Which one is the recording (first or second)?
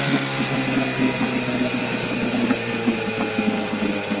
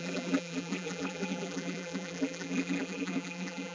first